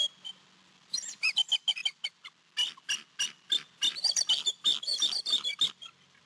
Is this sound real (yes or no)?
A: yes